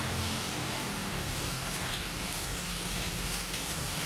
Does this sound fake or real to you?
fake